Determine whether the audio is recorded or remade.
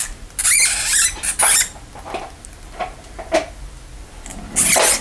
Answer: recorded